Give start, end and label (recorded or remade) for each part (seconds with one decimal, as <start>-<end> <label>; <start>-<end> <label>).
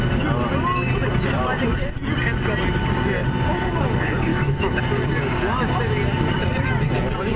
0.0-4.3 recorded; 4.3-4.8 remade; 4.8-7.4 recorded